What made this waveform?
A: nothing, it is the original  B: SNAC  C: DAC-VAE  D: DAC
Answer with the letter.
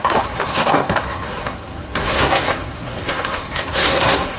B